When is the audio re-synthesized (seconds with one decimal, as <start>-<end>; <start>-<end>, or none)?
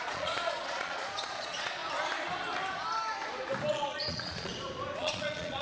0.0-1.8; 3.7-4.5; 5.0-5.6